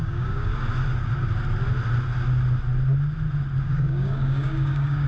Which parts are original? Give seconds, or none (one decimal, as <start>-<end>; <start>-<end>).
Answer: 0.5-3.6